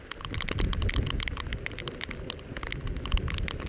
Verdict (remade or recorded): recorded